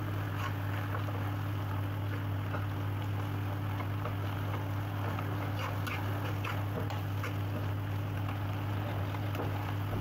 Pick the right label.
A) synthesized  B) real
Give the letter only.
B